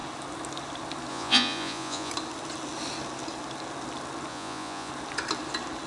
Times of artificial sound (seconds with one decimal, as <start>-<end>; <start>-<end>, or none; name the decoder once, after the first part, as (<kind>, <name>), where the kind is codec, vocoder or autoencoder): 1.1-2.1 (vocoder, Vocos); 4.3-4.9